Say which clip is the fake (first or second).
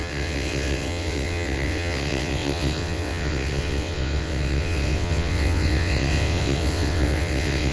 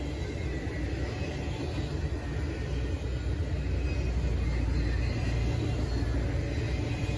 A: first